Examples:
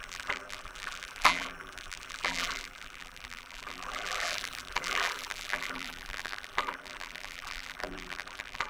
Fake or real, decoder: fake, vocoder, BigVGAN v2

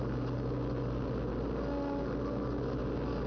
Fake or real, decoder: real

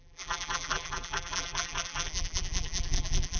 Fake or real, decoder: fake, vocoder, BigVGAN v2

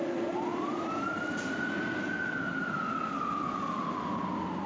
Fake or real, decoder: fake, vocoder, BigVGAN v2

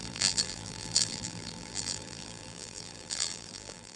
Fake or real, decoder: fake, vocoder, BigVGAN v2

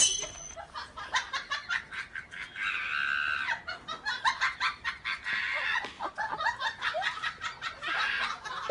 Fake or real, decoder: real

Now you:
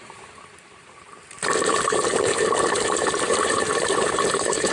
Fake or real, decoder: fake, vocoder, BigVGAN v2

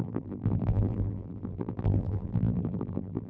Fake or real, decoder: fake, vocoder, BigVGAN v2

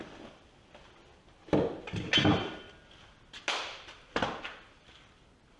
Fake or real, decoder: real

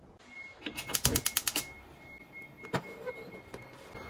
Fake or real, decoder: real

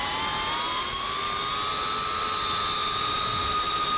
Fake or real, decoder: real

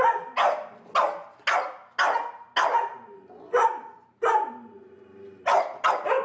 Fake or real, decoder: real